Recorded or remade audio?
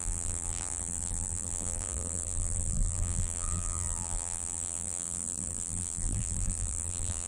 remade